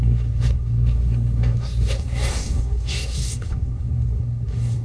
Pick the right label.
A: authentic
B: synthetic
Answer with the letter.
B